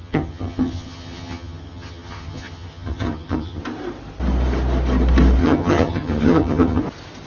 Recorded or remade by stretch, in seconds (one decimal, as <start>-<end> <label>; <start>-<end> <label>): 0.0-3.6 remade; 3.6-5.4 recorded; 5.4-6.8 remade; 6.8-7.3 recorded